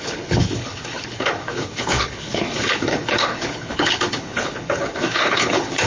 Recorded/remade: remade